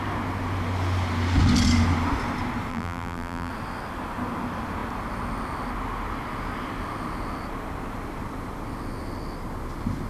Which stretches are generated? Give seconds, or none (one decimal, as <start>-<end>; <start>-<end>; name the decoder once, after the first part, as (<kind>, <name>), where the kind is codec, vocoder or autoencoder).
2.7-3.5 (vocoder, BigVGAN v2)